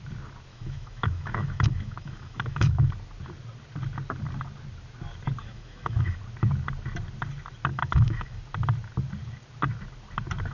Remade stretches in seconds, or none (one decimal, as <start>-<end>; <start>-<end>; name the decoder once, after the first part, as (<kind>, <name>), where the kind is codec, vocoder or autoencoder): 0.5-2.9 (autoencoder, DAC-VAE); 5.4-6.2; 7.7-8.4